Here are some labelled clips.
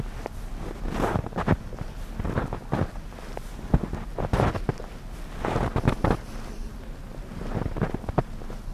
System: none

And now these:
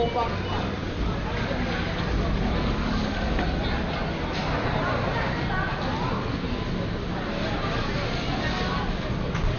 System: none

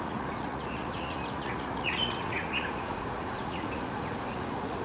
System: vocoder, Vocos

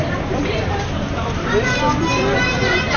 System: none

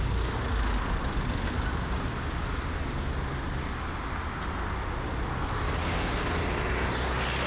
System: none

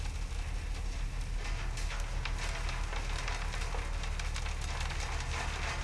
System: none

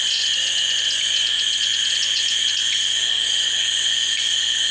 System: vocoder, Vocos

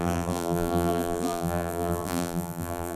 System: vocoder, BigVGAN v2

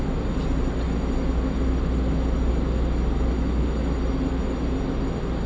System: none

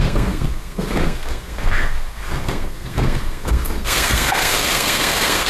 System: codec, SNAC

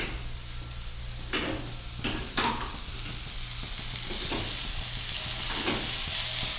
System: none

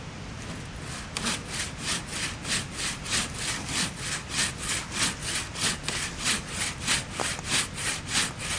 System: none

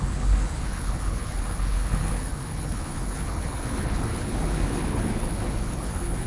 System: codec, HILCodec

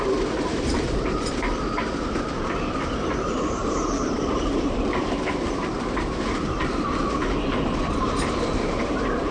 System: vocoder, BigVGAN v2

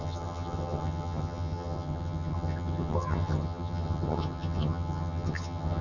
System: vocoder, HiFi-GAN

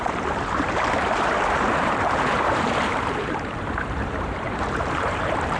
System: vocoder, BigVGAN v2